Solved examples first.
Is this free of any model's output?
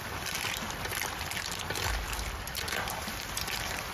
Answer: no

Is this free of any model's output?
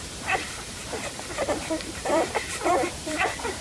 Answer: no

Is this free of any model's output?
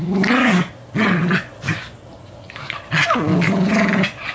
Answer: yes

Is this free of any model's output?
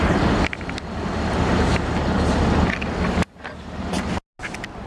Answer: yes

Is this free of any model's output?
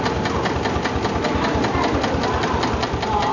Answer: yes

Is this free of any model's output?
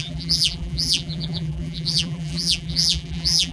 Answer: no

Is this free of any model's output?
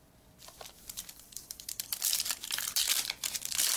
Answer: no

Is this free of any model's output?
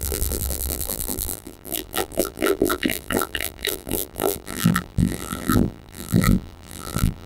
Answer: no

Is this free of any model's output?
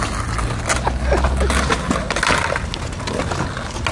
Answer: yes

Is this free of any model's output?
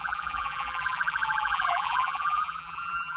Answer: no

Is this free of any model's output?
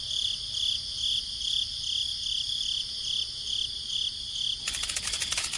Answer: yes